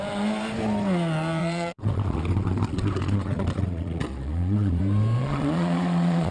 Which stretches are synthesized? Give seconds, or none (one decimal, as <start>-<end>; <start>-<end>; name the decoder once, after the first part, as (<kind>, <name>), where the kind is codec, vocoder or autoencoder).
1.4-4.8 (vocoder, Vocos); 5.2-6.3